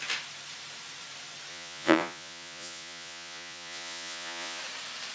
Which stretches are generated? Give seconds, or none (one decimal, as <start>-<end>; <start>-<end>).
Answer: 1.5-4.6